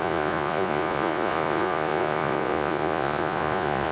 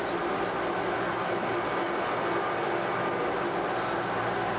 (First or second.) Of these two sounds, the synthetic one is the first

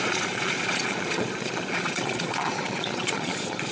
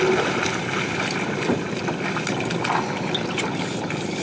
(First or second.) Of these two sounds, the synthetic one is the first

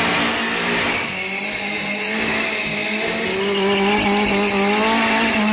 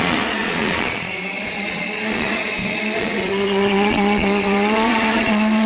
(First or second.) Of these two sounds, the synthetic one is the second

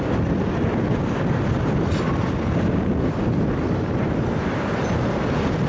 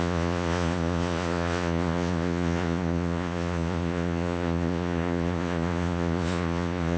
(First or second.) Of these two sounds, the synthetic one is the second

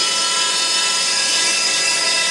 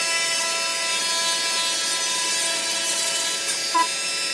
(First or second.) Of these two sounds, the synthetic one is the first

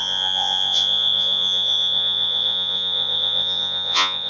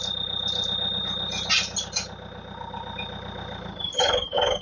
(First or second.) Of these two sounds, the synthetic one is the first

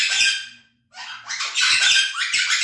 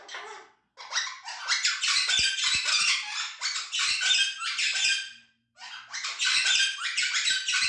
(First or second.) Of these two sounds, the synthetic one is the first